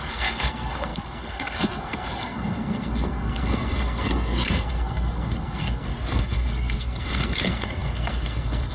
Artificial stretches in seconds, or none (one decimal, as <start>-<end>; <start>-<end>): 0.0-8.7